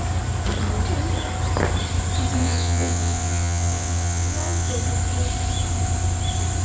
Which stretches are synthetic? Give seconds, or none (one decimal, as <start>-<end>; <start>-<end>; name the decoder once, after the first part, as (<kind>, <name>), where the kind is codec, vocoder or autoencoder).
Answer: 2.4-4.7 (vocoder, WaveNeXt)